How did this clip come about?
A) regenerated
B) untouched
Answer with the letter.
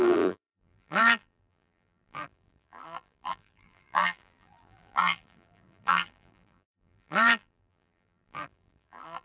A